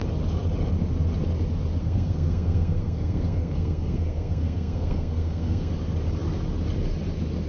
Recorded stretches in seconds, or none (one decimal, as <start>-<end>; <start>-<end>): 0.0-1.8; 5.7-7.5

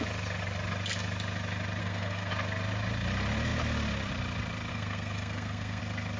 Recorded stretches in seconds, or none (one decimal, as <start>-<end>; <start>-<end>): 0.0-1.8; 2.3-4.7; 5.8-6.2

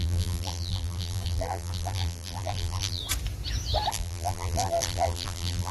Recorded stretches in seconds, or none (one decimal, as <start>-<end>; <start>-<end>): 3.0-3.9